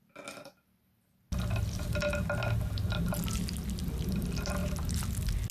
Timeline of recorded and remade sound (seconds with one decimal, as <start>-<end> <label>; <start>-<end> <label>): 0.0-5.5 recorded